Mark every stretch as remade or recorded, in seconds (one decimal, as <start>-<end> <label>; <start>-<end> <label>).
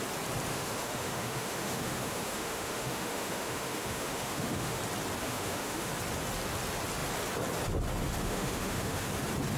0.0-0.5 recorded; 0.5-4.8 remade; 4.8-5.2 recorded; 5.2-5.9 remade; 5.9-8.2 recorded; 8.2-9.1 remade; 9.1-9.6 recorded